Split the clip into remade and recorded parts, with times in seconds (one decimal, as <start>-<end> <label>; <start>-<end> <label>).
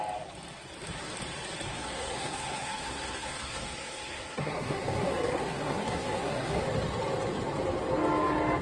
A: 0.0-1.7 recorded; 1.7-6.6 remade; 6.6-8.6 recorded